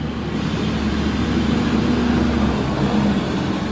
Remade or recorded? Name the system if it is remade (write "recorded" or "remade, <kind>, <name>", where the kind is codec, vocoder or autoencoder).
recorded